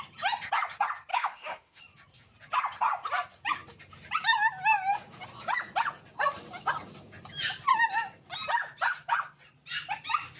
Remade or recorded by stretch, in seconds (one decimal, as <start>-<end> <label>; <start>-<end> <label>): 0.0-1.1 recorded; 1.1-1.8 remade; 1.8-10.4 recorded